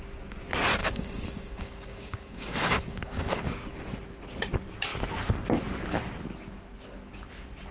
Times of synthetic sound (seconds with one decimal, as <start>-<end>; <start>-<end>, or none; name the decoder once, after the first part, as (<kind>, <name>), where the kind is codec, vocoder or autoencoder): 0.8-3.4 (codec, DAC)